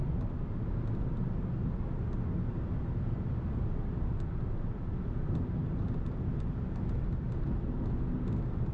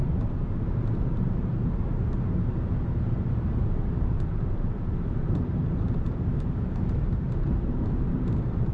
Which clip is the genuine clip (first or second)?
first